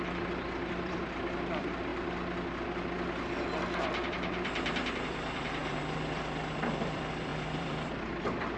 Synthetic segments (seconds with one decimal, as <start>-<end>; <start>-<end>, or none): 0.0-1.9; 3.8-8.6